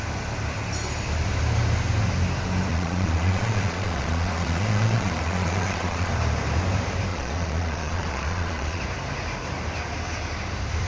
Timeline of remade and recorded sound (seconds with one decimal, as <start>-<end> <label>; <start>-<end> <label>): 0.0-2.7 recorded; 2.7-6.1 remade; 6.1-7.1 recorded; 7.1-8.8 remade; 8.8-10.9 recorded